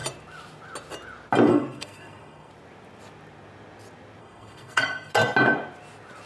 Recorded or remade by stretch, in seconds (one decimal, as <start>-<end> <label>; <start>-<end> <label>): 0.0-1.5 recorded; 1.5-2.5 remade; 2.5-4.2 recorded; 4.2-5.1 remade; 5.1-6.3 recorded